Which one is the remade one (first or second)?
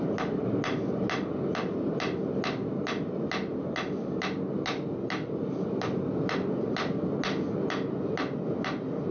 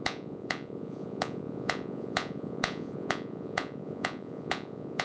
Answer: second